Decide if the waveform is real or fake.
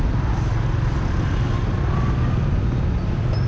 real